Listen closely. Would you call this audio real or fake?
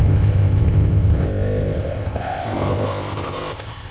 fake